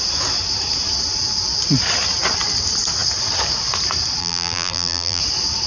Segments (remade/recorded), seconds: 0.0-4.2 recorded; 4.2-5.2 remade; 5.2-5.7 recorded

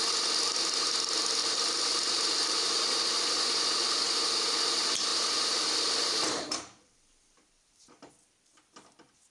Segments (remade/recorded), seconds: 0.0-1.4 recorded; 1.4-3.0 remade; 3.0-5.1 recorded; 5.1-8.1 remade; 8.1-9.3 recorded

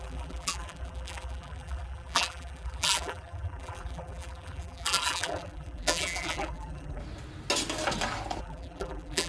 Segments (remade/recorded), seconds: 0.0-7.0 remade; 7.0-8.4 recorded; 8.4-9.3 remade

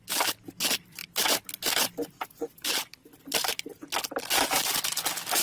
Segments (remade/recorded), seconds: 0.0-5.4 recorded

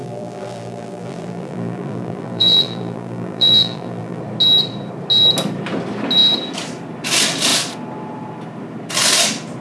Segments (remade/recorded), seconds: 0.0-4.2 remade; 4.2-9.6 recorded

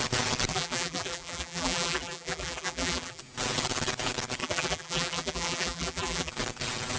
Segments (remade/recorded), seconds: 0.0-0.5 recorded; 0.5-3.2 remade; 3.2-4.4 recorded; 4.4-6.3 remade; 6.3-7.0 recorded